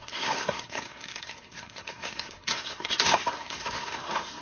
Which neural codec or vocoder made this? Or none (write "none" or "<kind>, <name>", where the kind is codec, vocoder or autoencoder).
codec, SNAC